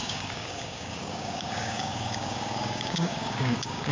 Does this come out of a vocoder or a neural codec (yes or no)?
yes